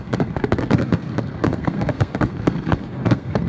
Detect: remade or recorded remade